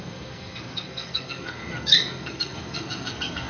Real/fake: fake